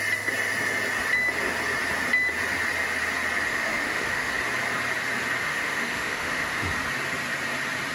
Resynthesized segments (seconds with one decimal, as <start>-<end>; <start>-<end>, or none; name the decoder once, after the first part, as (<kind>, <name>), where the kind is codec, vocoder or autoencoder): 3.5-4.3 (autoencoder, DAC-VAE); 5.4-6.7